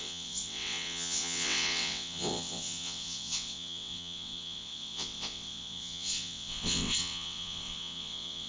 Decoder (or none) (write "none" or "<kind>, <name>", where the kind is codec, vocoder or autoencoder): vocoder, WaveNeXt